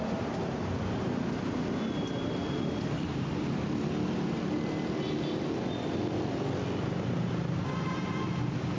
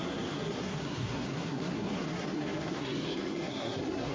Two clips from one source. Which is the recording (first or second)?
first